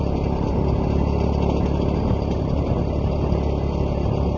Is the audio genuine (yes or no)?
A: yes